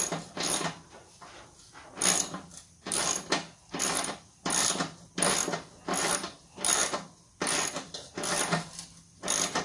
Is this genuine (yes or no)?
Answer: yes